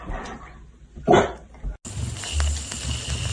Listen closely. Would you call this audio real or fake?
real